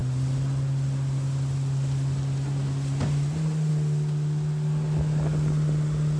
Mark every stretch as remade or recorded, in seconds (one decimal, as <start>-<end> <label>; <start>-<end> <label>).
0.0-6.2 recorded